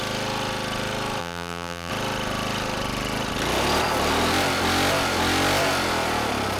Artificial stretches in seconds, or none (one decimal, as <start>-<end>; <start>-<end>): 1.2-1.9